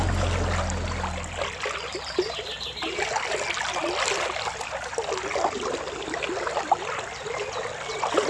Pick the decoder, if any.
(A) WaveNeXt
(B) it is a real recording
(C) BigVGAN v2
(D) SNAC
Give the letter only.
B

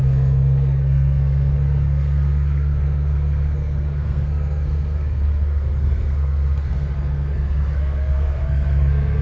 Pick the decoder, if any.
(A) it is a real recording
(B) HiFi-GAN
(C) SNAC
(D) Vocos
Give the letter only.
C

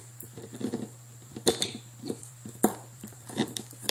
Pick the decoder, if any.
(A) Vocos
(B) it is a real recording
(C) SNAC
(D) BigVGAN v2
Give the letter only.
D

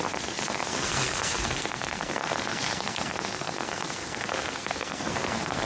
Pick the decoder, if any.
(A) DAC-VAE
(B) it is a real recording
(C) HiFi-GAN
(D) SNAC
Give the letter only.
D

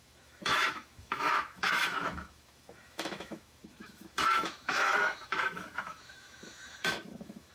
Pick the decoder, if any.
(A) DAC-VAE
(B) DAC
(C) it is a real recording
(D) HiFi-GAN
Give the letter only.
A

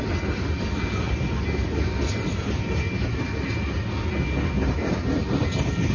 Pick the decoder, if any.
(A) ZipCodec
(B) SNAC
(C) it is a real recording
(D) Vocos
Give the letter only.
C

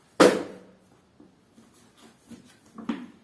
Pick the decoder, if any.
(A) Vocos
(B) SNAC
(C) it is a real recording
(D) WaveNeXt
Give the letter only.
C